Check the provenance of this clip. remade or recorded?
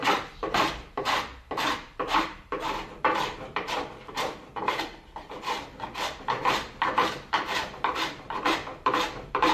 remade